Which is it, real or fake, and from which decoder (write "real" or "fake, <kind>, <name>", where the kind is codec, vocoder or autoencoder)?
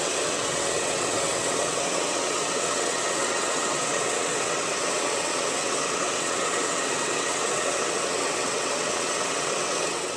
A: fake, vocoder, WaveNeXt